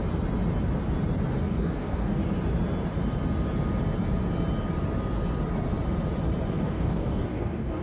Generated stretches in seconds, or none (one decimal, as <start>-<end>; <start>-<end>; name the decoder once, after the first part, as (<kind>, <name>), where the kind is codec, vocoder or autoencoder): 1.4-2.2 (codec, DAC); 6.5-7.8